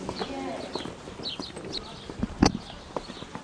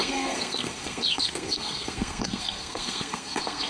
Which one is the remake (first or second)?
second